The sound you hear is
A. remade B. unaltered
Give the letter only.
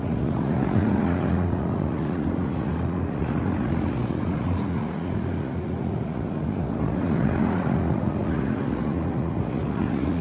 A